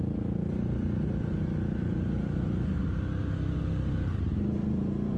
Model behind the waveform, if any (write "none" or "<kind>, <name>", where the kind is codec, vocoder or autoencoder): none